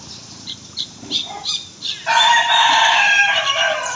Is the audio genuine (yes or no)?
no